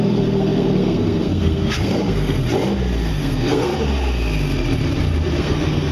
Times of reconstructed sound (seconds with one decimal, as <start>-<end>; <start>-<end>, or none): 0.0-2.4; 3.1-3.7; 5.4-5.9